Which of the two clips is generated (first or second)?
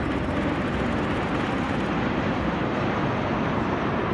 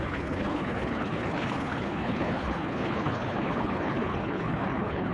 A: second